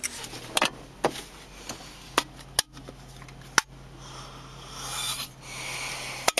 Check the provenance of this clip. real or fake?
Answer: real